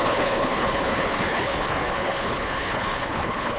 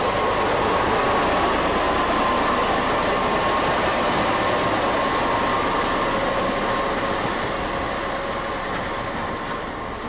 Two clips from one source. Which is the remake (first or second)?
first